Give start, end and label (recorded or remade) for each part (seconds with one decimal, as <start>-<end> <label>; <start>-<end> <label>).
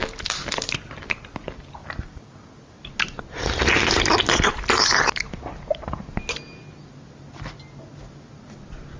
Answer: 0.0-9.0 recorded